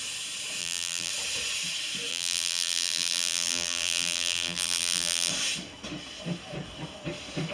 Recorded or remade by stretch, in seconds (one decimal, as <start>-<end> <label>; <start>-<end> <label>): 0.0-0.6 recorded; 0.6-1.1 remade; 1.1-2.1 recorded; 2.1-5.3 remade; 5.3-7.5 recorded

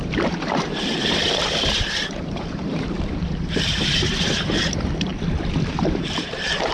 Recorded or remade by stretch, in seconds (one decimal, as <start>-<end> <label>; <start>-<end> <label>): 0.0-5.1 remade; 5.1-5.7 recorded; 5.7-6.7 remade

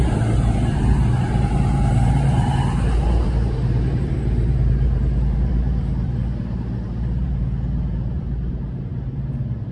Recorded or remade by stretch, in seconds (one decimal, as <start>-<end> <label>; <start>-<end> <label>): 0.0-9.7 remade

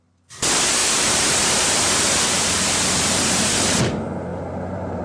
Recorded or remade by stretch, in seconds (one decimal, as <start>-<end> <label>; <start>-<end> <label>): 0.0-0.8 recorded; 0.8-3.8 remade; 3.8-4.3 recorded; 4.3-5.0 remade

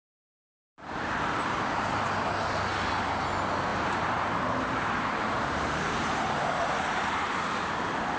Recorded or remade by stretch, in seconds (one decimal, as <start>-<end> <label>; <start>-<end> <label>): 0.0-1.5 remade; 1.5-3.7 recorded; 3.7-6.7 remade; 6.7-8.2 recorded

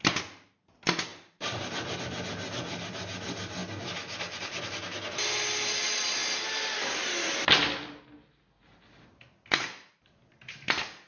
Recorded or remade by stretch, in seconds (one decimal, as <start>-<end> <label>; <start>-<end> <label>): 0.0-1.1 recorded; 1.1-2.0 remade; 2.0-11.1 recorded